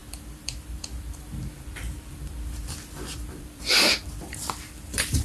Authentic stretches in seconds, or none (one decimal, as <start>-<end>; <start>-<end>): none